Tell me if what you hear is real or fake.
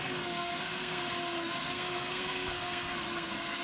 fake